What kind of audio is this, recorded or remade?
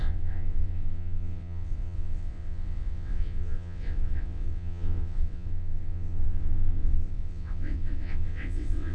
remade